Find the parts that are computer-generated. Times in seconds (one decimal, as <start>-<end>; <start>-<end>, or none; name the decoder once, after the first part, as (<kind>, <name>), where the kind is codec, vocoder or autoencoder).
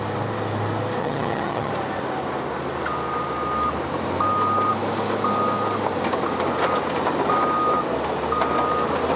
1.0-1.7 (vocoder, HiFi-GAN)